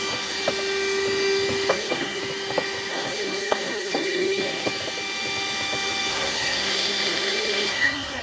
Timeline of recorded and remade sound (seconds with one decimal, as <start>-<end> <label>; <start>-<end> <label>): 0.0-1.7 recorded; 1.7-2.2 remade; 2.2-2.9 recorded; 2.9-4.7 remade; 4.7-6.1 recorded; 6.1-8.2 remade